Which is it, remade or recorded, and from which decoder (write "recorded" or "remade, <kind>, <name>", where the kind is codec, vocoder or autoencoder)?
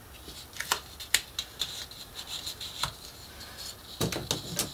recorded